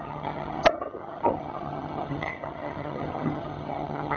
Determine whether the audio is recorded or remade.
remade